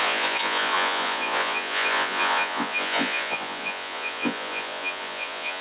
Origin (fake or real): fake